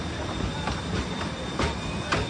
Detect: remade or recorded recorded